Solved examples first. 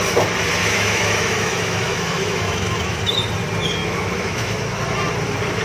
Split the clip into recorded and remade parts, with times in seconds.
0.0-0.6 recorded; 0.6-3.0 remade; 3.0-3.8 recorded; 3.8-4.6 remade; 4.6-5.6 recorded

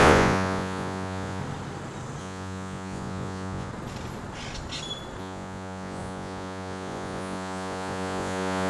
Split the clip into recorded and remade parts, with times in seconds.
0.0-1.4 remade; 1.4-2.2 recorded; 2.2-3.7 remade; 3.7-5.2 recorded; 5.2-8.7 remade

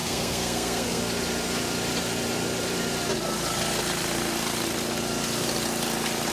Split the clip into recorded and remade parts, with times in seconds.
0.0-1.0 remade; 1.0-6.3 recorded

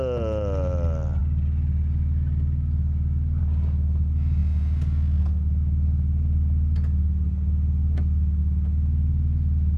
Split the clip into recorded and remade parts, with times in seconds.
0.0-9.8 recorded

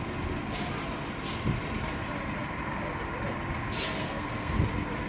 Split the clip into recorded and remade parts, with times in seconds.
0.0-4.0 recorded; 4.0-4.6 remade; 4.6-5.1 recorded

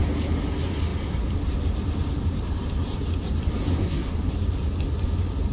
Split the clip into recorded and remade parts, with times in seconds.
0.0-3.7 recorded; 3.7-4.3 remade; 4.3-5.5 recorded

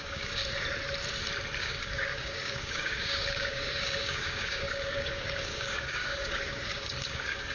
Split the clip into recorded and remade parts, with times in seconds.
0.0-0.4 remade; 0.4-1.6 recorded; 1.6-7.5 remade